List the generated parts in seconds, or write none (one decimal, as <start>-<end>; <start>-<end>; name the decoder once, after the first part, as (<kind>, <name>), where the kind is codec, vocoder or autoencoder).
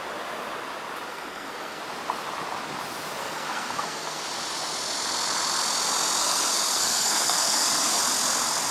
1.1-1.8 (codec, SNAC); 3.2-4.2; 6.2-8.0